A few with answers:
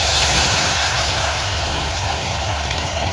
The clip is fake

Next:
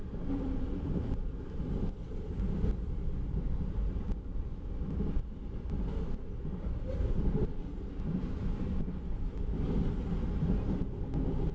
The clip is real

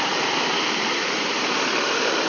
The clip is real